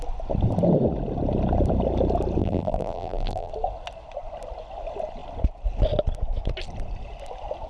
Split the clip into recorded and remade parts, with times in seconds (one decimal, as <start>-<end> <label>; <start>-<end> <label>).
0.0-2.4 recorded; 2.4-3.5 remade; 3.5-7.7 recorded